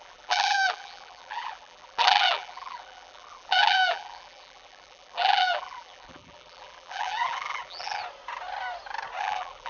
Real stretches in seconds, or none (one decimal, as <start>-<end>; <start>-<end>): 8.0-9.2